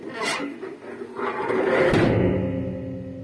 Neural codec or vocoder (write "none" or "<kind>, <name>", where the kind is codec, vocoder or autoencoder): none